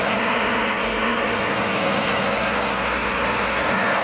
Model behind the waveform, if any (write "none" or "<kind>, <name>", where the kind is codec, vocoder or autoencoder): codec, SNAC